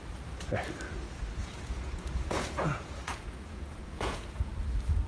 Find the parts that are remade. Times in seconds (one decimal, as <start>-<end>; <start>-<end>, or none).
1.4-4.5